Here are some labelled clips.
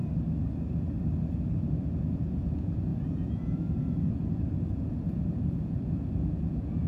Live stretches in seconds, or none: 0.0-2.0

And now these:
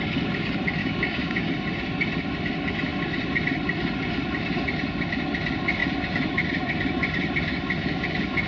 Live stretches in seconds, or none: 0.0-0.8; 1.5-8.5

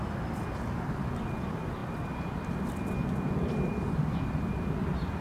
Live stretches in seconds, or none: none

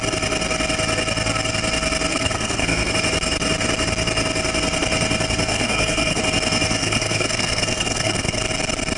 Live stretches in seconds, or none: 0.0-2.1; 2.9-5.5; 6.2-6.8; 8.4-9.0